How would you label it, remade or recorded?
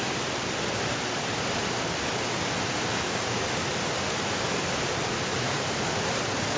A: recorded